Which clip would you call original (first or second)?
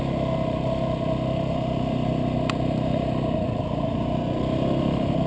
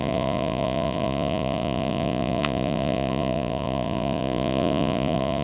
first